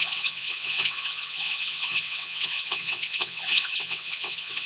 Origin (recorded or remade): remade